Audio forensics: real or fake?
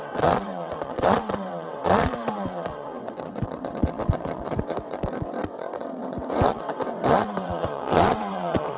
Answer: fake